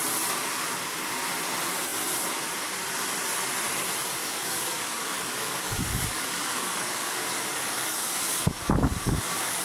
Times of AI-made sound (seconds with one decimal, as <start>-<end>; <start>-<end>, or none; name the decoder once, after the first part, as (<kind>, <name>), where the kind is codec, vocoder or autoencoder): 4.2-9.6 (codec, DAC)